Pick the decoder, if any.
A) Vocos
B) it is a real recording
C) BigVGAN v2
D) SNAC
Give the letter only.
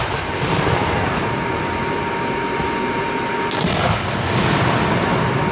B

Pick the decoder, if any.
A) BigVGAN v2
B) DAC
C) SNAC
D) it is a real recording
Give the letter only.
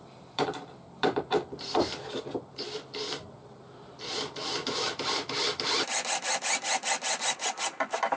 A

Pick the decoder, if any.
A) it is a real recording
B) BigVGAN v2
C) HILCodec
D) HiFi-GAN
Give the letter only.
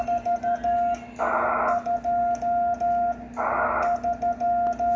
A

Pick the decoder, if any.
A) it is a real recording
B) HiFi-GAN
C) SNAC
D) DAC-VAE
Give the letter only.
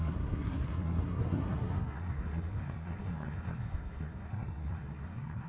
C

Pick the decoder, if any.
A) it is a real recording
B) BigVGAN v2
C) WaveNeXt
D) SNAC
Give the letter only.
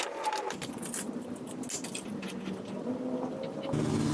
A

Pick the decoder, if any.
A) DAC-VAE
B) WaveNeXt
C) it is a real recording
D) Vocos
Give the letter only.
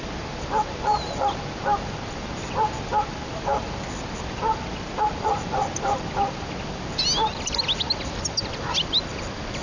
C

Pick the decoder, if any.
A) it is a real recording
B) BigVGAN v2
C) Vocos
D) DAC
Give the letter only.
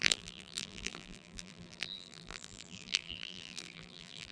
B